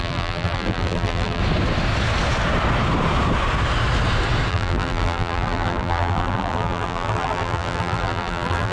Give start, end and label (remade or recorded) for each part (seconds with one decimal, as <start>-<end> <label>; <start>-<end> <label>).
0.0-1.4 remade; 1.4-4.5 recorded; 4.5-8.7 remade